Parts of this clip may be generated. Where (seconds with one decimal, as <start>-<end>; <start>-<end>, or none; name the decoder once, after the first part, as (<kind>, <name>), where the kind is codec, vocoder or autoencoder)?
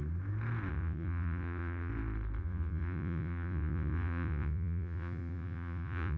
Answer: 0.7-1.9 (vocoder, Vocos); 2.4-6.2